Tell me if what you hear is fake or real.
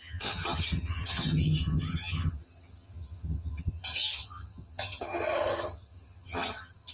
fake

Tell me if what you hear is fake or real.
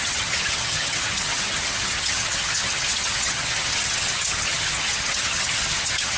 fake